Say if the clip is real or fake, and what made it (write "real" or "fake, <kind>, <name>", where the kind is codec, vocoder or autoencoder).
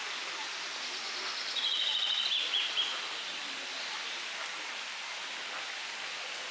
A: real